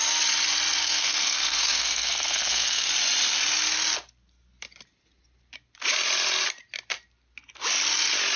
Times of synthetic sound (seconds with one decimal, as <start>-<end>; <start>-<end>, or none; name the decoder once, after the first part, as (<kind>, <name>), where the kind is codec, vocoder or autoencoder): 0.8-2.9 (codec, SNAC)

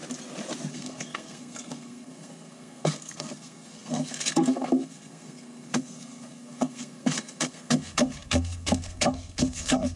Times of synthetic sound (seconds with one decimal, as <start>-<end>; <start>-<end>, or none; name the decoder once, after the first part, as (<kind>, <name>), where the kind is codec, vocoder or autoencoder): 0.7-10.0 (codec, SNAC)

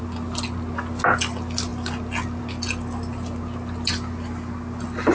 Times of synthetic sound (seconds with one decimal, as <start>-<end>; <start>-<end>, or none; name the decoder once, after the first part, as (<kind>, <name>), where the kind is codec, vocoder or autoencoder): none

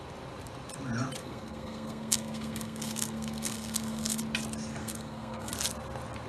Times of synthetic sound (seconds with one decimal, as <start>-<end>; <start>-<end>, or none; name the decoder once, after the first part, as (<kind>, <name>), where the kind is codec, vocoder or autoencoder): 1.2-4.2 (codec, SNAC); 4.8-5.5

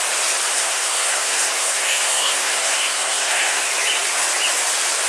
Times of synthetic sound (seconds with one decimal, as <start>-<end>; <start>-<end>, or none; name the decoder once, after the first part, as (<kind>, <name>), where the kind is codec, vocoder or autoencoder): 0.5-3.6 (codec, SNAC)

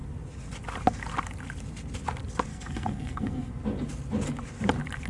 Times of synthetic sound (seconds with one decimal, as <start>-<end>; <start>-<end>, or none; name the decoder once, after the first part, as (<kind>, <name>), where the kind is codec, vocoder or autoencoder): 2.5-3.5 (codec, SNAC)

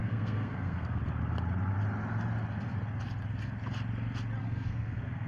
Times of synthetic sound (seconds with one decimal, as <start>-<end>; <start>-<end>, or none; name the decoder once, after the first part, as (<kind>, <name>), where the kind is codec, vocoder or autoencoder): 0.0-1.0 (codec, SNAC); 4.4-5.3